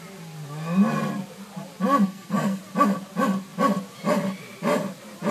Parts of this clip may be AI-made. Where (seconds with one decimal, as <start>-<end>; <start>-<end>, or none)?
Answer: 2.0-2.6